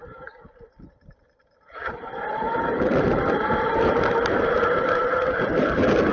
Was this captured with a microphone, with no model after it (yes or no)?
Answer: no